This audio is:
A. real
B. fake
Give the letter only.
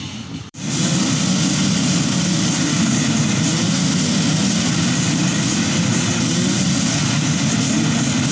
B